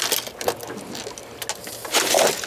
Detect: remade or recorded recorded